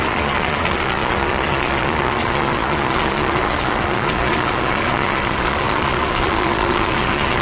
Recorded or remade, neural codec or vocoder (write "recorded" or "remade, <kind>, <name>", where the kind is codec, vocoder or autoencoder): remade, vocoder, Vocos